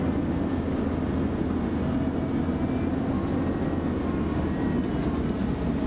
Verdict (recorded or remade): recorded